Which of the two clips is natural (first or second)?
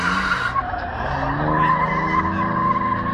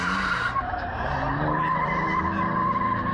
first